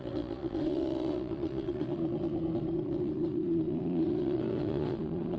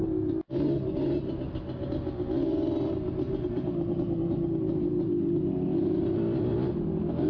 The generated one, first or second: first